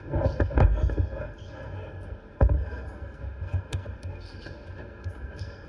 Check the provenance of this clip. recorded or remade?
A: remade